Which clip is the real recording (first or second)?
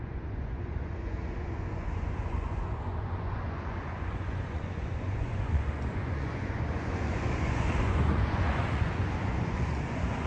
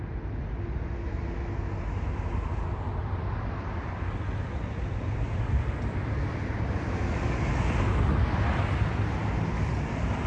second